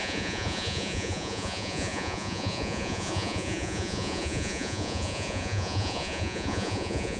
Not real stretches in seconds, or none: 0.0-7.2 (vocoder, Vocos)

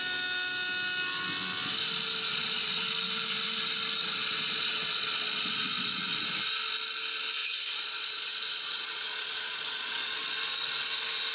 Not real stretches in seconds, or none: 2.3-2.8 (vocoder, Vocos); 4.0-6.3; 7.4-10.4